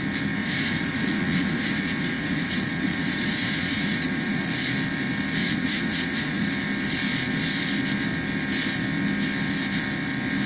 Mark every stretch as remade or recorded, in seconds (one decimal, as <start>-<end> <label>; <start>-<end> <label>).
0.0-0.4 recorded; 0.4-4.4 remade; 4.4-5.4 recorded; 5.4-6.5 remade; 6.5-10.5 recorded